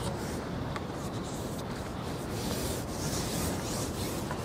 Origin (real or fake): fake